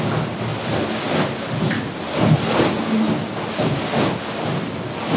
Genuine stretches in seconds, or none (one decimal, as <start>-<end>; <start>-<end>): 0.0-5.2